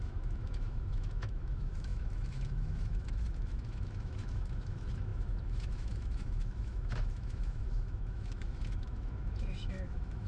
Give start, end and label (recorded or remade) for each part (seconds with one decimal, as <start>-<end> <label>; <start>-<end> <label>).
0.0-10.3 remade